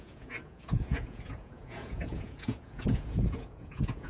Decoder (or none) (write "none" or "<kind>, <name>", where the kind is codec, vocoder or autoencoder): vocoder, Vocos